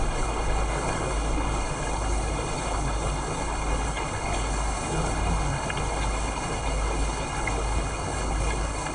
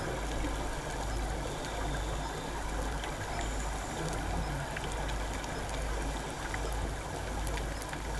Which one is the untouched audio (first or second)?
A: second